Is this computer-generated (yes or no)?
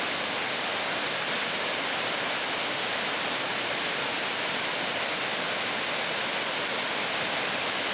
no